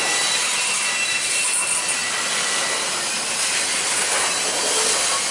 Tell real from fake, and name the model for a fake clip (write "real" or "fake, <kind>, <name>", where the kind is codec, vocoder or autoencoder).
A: real